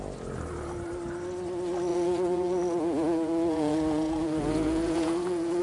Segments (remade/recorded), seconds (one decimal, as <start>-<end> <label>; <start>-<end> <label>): 0.0-1.9 recorded; 1.9-5.6 remade